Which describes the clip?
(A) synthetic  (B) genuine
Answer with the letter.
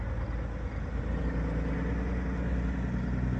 B